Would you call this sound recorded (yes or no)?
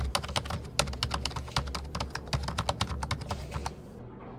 yes